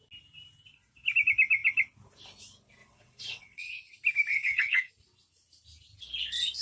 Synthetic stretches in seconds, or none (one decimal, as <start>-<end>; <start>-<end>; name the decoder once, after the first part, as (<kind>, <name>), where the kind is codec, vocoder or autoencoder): 2.8-3.9 (vocoder, WaveNeXt); 4.3-4.9